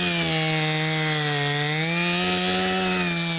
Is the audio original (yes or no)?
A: yes